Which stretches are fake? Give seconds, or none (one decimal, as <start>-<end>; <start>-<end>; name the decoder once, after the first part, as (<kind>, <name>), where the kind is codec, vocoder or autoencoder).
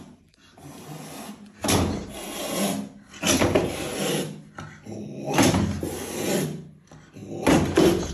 none